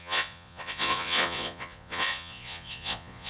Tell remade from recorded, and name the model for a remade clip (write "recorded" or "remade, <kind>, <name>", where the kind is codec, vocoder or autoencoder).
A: remade, vocoder, Vocos